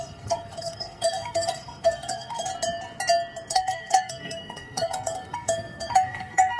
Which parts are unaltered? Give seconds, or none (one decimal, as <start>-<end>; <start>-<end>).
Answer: 2.5-3.5

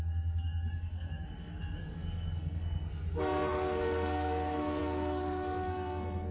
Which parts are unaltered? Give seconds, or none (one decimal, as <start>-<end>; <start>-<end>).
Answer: none

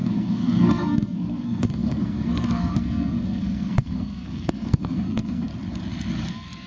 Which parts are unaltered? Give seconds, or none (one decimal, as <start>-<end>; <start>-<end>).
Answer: 5.5-6.3

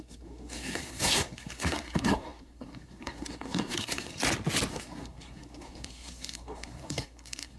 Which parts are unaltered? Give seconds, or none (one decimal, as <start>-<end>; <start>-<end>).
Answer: 4.2-4.7